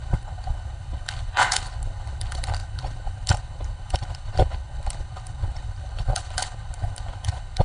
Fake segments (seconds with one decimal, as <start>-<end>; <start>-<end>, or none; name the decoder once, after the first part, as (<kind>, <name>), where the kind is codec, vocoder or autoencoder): 0.0-7.6 (codec, HILCodec)